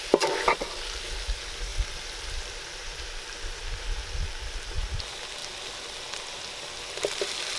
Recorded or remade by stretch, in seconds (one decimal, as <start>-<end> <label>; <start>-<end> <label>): 0.0-1.7 recorded; 1.7-3.1 remade; 3.1-7.6 recorded